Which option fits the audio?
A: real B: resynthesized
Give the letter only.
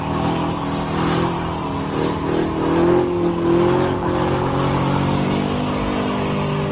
A